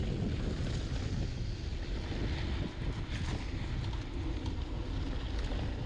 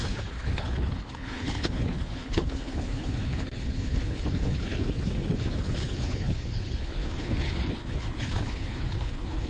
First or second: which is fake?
second